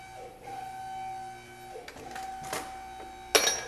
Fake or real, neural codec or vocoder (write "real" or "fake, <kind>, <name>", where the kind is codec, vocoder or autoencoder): real